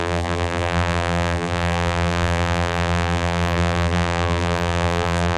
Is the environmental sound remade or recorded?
remade